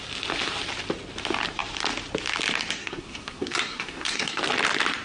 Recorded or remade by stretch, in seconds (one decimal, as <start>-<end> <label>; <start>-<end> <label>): 0.0-2.8 recorded; 2.8-4.4 remade; 4.4-5.0 recorded